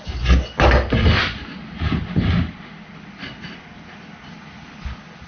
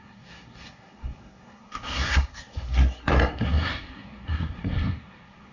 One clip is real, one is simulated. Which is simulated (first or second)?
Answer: second